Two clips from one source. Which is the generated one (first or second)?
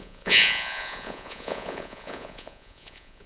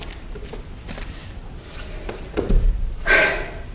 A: first